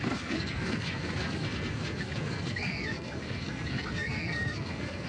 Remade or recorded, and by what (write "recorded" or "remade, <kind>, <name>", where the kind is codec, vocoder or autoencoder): remade, codec, SNAC